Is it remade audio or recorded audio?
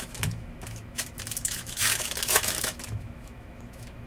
remade